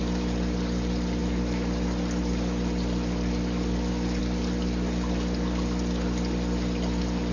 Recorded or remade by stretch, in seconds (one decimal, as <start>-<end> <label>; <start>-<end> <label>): 0.0-7.3 recorded